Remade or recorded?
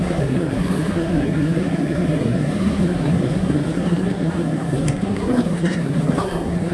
remade